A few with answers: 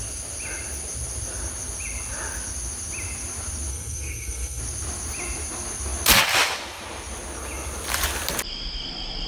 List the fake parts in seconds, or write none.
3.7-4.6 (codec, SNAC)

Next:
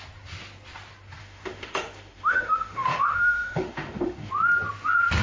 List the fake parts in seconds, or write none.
1.2-4.3 (autoencoder, DAC-VAE)